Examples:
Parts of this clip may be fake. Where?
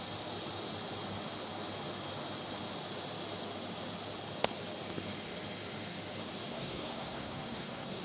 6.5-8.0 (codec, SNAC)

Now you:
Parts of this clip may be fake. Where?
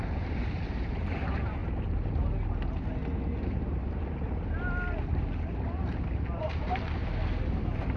0.0-1.6 (vocoder, BigVGAN v2); 6.4-7.0; 7.6-8.0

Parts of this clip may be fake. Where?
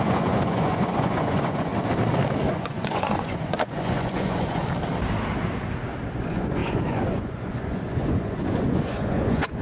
0.0-1.7 (vocoder, Vocos); 2.5-4.6; 6.1-9.6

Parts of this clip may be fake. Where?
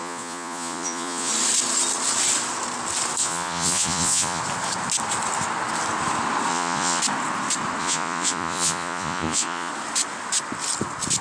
0.0-1.3 (vocoder, Vocos); 3.2-4.4; 6.5-7.0; 7.8-9.7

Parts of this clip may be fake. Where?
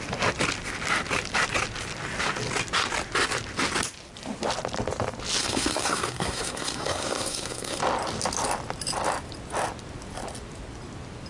5.4-7.8 (codec, SNAC)